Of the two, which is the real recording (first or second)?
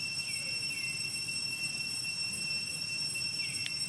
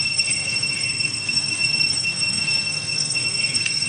first